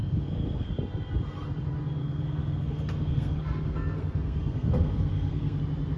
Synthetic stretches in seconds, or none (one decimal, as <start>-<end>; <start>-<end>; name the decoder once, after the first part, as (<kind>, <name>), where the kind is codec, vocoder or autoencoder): 0.0-0.7 (codec, SNAC); 2.0-5.6